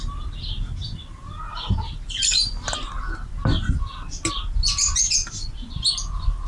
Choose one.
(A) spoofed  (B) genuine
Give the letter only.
B